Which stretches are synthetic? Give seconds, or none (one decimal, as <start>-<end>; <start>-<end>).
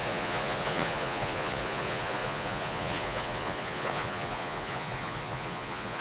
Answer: 0.0-6.0